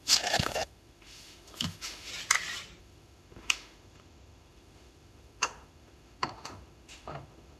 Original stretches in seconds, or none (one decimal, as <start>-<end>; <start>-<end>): 2.1-2.8